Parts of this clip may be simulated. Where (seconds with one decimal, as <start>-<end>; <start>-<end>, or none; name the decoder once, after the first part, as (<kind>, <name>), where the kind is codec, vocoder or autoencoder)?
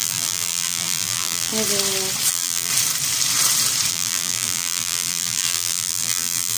0.0-1.5 (vocoder, BigVGAN v2); 2.3-2.7; 3.9-6.6